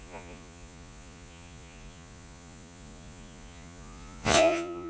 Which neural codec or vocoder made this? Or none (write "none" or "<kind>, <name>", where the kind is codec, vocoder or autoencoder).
vocoder, Vocos